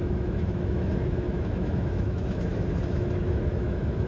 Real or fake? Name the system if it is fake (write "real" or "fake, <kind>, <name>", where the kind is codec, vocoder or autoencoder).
fake, autoencoder, DAC-VAE